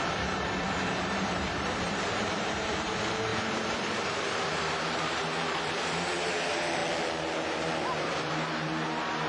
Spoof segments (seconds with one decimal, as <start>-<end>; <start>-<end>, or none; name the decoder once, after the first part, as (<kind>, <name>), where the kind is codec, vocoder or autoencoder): 0.0-6.8 (vocoder, BigVGAN v2); 8.0-8.7